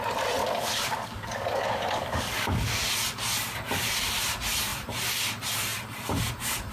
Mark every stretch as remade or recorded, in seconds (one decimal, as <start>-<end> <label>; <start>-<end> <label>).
0.0-0.4 recorded; 0.4-2.7 remade; 2.7-6.7 recorded

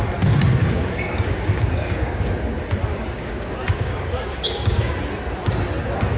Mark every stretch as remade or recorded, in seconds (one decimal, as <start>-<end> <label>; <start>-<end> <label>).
0.0-0.6 recorded; 0.6-2.3 remade; 2.3-2.9 recorded; 2.9-4.9 remade; 4.9-6.2 recorded

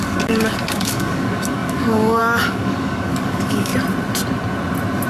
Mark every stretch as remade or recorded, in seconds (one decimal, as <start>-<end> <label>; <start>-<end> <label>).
0.0-3.7 remade; 3.7-5.1 recorded

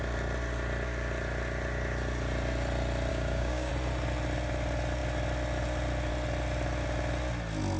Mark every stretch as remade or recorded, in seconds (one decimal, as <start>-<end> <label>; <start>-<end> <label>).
0.0-3.1 recorded; 3.1-3.7 remade; 3.7-7.8 recorded

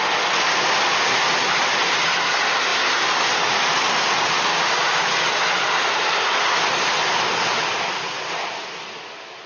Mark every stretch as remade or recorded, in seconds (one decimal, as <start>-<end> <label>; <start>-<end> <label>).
0.0-4.5 recorded; 4.5-5.1 remade; 5.1-9.5 recorded

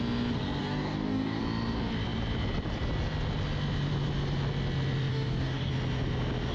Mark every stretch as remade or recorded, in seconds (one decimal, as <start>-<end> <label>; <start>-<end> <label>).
0.0-0.6 recorded; 0.6-1.4 remade; 1.4-5.1 recorded; 5.1-5.7 remade; 5.7-6.5 recorded